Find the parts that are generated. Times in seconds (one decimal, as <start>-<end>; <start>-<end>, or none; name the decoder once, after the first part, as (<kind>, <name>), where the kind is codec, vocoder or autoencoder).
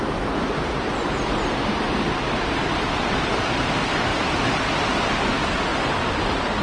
4.1-5.0 (vocoder, BigVGAN v2); 5.7-6.6